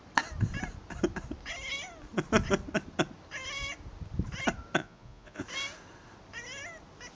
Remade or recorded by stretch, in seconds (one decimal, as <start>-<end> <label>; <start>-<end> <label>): 0.0-4.8 recorded; 4.8-5.4 remade; 5.4-7.1 recorded